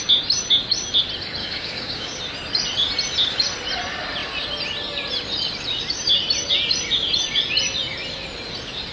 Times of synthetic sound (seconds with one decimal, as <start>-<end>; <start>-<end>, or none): 1.4-2.2